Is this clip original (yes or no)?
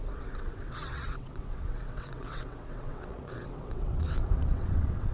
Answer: no